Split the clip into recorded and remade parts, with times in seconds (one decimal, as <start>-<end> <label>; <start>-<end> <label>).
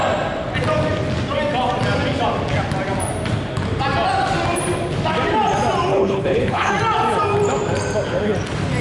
0.0-5.9 recorded; 5.9-6.7 remade; 6.7-8.8 recorded